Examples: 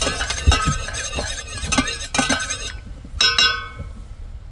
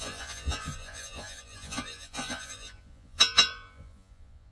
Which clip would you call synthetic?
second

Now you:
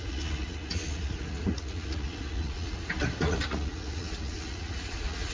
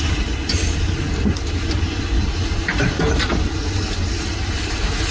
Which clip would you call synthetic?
first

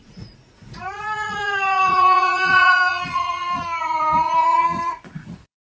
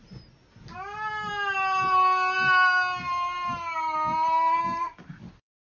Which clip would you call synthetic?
first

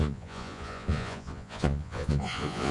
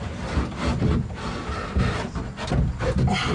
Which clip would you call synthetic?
first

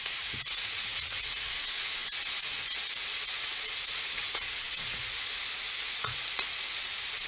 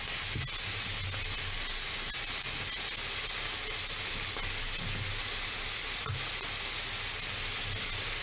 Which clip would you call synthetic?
first